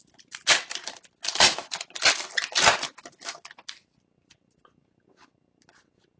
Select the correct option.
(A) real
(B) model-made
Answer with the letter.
A